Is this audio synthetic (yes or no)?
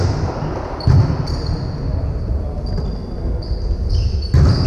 no